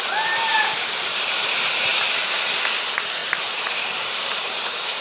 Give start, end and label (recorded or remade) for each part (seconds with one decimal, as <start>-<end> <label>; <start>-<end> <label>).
0.0-3.2 remade; 3.2-4.0 recorded; 4.0-5.0 remade